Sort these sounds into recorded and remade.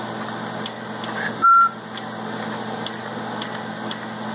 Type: recorded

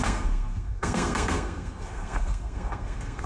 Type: remade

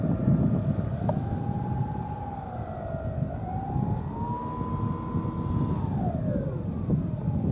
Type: recorded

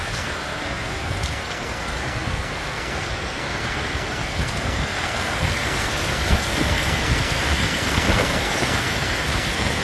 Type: remade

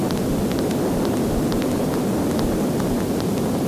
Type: recorded